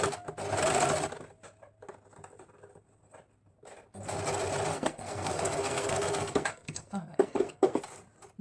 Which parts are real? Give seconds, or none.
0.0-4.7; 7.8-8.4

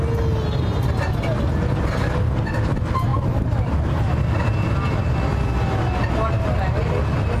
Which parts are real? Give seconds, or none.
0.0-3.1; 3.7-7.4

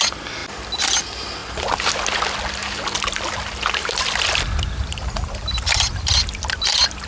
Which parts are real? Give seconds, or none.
0.0-7.1

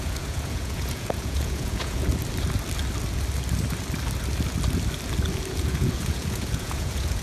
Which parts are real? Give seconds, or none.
2.1-5.5